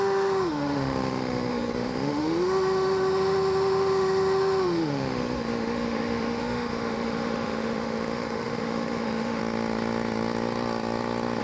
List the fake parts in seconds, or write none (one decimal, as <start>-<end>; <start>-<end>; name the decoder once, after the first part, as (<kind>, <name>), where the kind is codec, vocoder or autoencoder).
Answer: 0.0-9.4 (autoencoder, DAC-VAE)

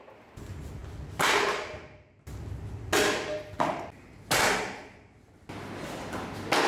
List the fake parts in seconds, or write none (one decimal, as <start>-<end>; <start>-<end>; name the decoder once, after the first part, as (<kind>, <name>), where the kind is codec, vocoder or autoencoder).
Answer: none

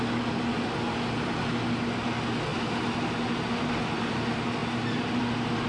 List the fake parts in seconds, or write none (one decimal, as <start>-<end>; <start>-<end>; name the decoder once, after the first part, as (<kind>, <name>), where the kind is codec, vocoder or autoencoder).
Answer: none

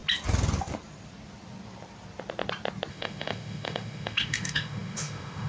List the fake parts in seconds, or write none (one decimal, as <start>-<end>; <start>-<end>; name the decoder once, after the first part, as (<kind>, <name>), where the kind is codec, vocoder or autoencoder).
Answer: 2.9-5.5 (autoencoder, DAC-VAE)

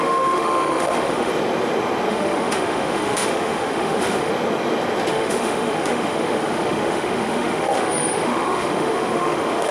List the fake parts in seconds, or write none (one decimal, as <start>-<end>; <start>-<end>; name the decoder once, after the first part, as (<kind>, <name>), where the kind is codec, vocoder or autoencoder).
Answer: 0.0-1.3 (autoencoder, DAC-VAE); 2.1-4.3; 5.1-9.7

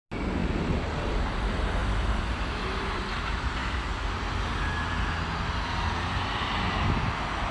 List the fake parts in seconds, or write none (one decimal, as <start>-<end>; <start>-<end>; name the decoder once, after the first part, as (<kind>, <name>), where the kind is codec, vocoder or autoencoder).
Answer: none

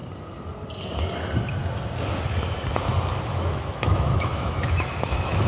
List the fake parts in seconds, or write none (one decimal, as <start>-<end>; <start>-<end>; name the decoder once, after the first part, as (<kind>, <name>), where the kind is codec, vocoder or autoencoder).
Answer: 3.2-5.5 (autoencoder, DAC-VAE)

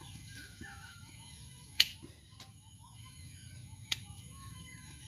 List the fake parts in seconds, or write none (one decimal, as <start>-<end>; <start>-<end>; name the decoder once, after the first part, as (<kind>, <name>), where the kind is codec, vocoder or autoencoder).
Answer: 0.0-1.9 (autoencoder, DAC-VAE); 2.5-5.1